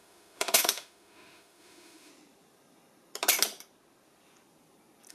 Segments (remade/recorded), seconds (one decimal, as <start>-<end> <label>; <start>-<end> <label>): 0.0-2.1 remade; 2.1-5.1 recorded